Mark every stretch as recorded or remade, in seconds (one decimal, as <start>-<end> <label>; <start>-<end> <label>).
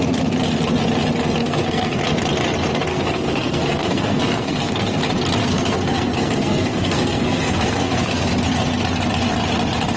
0.0-1.4 recorded; 1.4-2.0 remade; 2.0-2.9 recorded; 2.9-5.0 remade; 5.0-5.4 recorded; 5.4-8.3 remade; 8.3-10.0 recorded